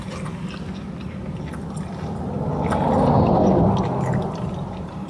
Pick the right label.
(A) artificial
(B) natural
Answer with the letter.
B